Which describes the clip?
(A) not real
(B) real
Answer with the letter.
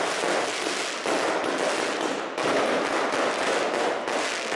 B